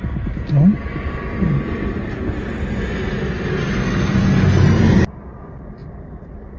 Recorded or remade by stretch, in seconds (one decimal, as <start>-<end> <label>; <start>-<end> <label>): 0.0-6.6 recorded